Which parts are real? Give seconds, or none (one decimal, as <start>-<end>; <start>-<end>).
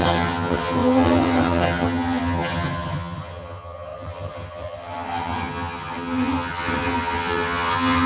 none